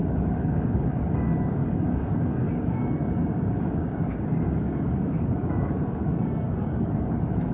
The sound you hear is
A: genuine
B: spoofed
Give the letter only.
B